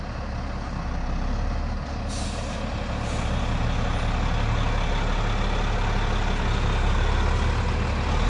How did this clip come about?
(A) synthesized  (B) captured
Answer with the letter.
B